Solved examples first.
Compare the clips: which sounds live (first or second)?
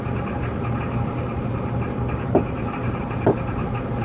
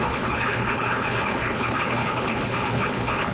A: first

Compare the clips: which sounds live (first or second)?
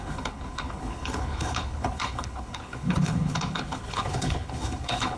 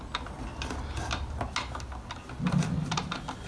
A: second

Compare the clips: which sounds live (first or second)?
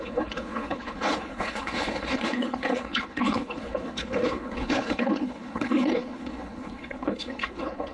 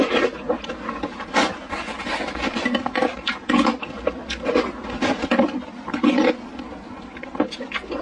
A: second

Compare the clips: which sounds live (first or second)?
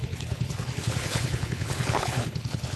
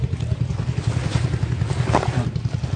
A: second